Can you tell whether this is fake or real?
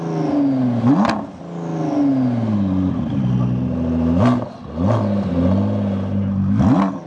real